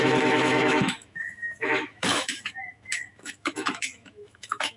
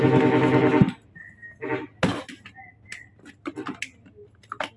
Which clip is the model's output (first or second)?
first